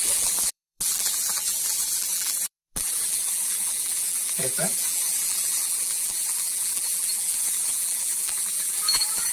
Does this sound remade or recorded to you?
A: remade